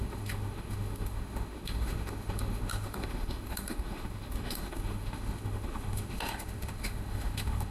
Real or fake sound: fake